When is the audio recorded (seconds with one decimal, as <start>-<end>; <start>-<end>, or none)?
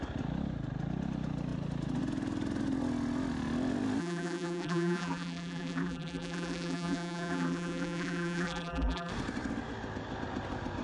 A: 0.0-4.0; 9.1-10.8